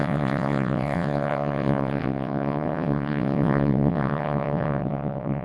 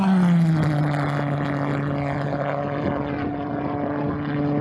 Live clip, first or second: second